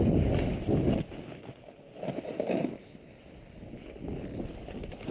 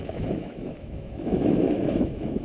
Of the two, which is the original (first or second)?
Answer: first